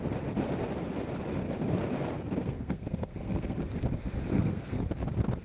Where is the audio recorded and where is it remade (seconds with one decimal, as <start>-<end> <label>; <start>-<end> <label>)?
0.0-2.4 recorded; 2.4-3.6 remade; 3.6-4.3 recorded; 4.3-4.8 remade; 4.8-5.4 recorded